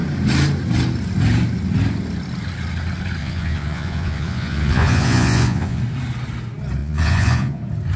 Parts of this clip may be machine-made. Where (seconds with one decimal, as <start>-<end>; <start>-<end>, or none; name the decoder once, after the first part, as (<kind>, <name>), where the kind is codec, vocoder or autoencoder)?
3.2-5.8 (vocoder, Vocos); 6.8-7.6